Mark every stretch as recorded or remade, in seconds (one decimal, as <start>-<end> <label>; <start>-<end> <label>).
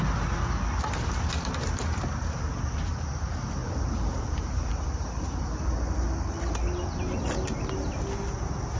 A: 0.0-3.6 recorded; 3.6-6.6 remade; 6.6-8.8 recorded